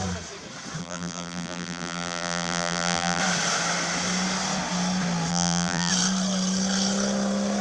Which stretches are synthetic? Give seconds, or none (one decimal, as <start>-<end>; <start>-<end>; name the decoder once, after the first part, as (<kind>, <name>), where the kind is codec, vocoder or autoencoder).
0.8-3.2 (vocoder, BigVGAN v2); 5.3-5.9